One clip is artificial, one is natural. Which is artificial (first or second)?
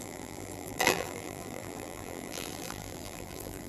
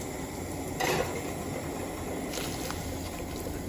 first